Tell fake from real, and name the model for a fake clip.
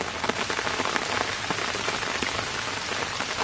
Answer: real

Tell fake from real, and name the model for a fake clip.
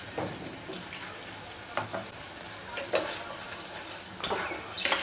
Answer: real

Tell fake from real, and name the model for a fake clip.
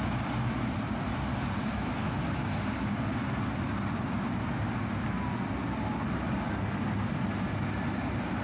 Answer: real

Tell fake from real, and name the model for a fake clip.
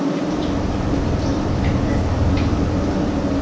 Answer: real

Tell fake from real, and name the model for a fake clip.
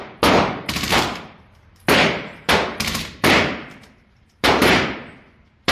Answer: fake, vocoder, BigVGAN v2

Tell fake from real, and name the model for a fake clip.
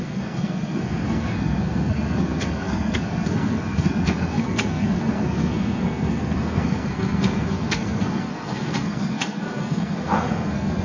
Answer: fake, codec, SNAC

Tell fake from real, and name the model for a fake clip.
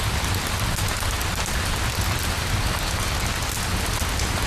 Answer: real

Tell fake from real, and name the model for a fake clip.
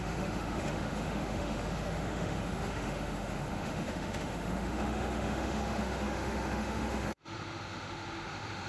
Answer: fake, autoencoder, DAC-VAE